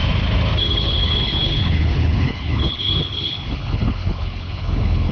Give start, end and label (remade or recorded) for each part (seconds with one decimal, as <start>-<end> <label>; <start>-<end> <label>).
0.0-0.6 recorded; 0.6-5.1 remade